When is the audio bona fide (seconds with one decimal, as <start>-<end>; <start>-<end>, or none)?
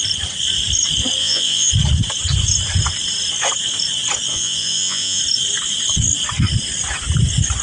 0.0-1.2; 1.7-4.3; 5.2-7.6